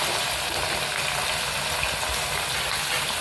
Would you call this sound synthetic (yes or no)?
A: no